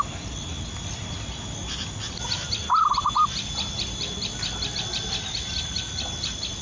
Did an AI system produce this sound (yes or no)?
no